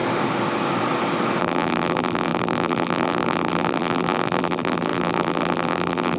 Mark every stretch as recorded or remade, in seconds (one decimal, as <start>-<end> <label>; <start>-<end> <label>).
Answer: 0.0-1.4 recorded; 1.4-6.2 remade